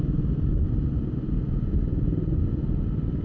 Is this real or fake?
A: real